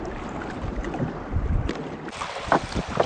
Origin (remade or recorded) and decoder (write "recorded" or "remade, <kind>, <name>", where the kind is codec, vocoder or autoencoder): recorded